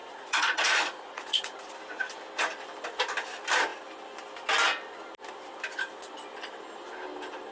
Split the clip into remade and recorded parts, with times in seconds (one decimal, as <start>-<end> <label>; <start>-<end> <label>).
0.0-1.7 remade; 1.7-7.5 recorded